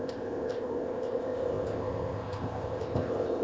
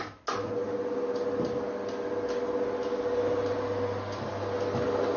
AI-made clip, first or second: first